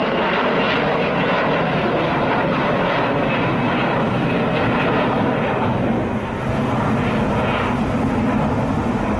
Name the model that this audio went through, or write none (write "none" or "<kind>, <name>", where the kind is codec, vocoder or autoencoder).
none